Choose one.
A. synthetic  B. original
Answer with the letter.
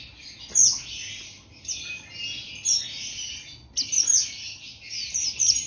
B